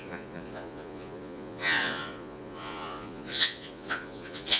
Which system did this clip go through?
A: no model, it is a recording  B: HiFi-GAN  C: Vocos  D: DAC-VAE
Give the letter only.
C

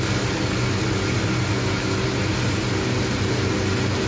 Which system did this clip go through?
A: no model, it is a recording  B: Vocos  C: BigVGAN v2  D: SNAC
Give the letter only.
A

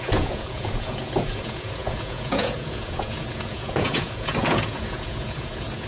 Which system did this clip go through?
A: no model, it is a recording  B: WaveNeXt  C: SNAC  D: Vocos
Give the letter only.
D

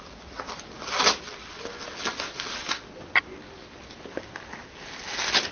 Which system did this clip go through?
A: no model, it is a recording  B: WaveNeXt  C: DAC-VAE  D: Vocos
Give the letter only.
A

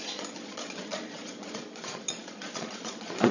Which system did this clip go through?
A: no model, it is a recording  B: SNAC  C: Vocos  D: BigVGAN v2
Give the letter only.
C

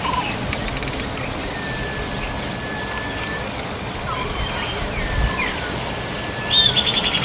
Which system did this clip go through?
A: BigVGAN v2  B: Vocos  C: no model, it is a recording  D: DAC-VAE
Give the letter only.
C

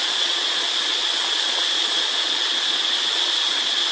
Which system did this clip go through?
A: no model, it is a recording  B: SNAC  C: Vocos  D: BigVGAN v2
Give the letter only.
C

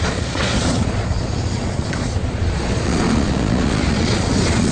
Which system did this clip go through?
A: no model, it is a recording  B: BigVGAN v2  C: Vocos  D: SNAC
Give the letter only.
C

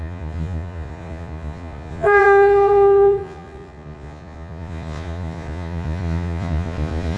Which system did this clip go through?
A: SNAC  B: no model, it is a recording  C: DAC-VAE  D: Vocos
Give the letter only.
D